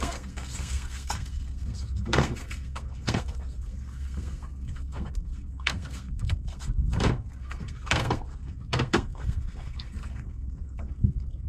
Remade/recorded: remade